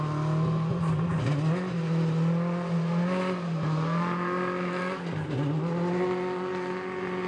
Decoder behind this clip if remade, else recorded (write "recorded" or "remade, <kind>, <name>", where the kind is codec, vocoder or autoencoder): recorded